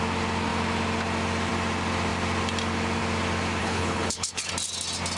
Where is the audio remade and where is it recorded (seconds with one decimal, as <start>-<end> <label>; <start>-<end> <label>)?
0.0-3.6 recorded; 3.6-4.5 remade; 4.5-5.2 recorded